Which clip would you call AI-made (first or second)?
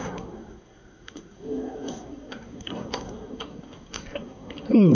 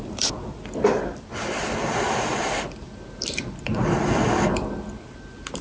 first